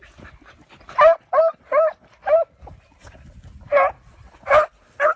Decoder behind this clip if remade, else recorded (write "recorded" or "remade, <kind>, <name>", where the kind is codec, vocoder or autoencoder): recorded